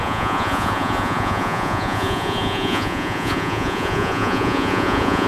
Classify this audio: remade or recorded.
remade